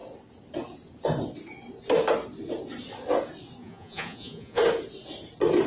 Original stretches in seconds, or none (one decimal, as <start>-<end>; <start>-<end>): 0.0-3.6; 4.6-5.7